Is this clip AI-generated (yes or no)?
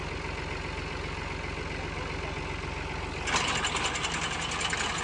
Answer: no